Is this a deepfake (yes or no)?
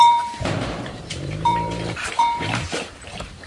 yes